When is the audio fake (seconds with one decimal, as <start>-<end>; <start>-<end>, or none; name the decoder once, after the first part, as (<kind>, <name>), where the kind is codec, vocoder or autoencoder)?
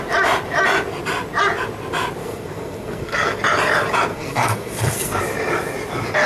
2.2-3.4 (codec, SNAC); 4.1-5.2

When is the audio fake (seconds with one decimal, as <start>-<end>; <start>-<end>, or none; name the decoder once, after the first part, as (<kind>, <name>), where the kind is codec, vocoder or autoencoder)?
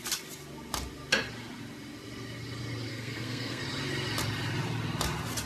2.9-3.6 (codec, SNAC)